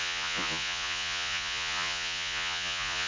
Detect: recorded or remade remade